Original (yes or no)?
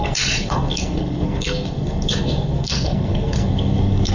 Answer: no